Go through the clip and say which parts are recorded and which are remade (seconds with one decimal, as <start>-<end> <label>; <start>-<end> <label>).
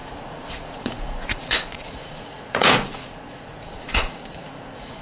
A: 0.0-5.0 remade